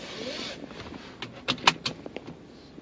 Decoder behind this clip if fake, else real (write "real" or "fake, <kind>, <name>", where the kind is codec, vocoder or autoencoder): real